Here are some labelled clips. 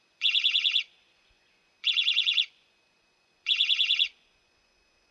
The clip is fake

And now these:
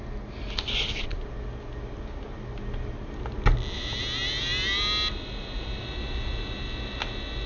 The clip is real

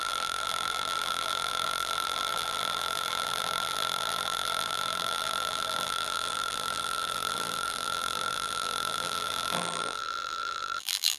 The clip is fake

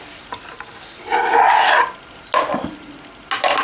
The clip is real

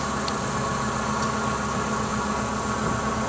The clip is real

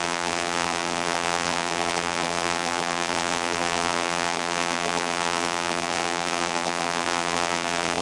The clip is fake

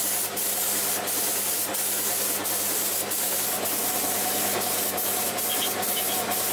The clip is real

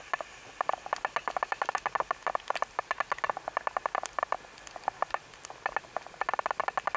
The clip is real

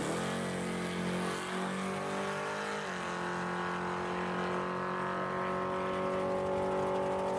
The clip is real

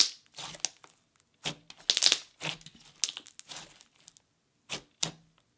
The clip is real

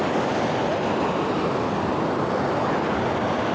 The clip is real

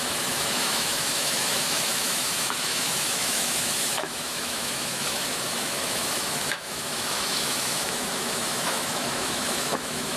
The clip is fake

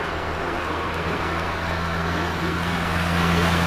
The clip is fake